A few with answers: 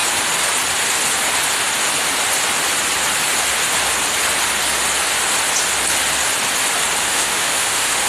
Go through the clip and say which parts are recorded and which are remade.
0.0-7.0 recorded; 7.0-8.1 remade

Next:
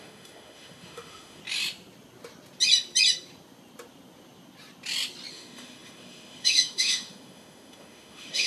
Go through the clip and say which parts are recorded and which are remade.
0.0-1.4 remade; 1.4-5.3 recorded; 5.3-8.5 remade

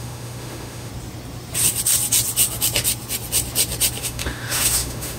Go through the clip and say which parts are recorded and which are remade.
0.0-0.9 remade; 0.9-4.0 recorded; 4.0-5.2 remade